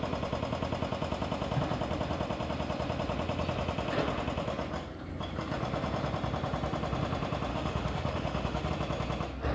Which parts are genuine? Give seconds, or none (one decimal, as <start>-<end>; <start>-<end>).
0.0-7.5; 8.7-9.5